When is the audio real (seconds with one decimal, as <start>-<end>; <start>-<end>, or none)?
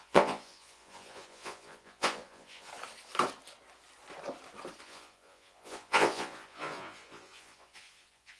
2.7-4.8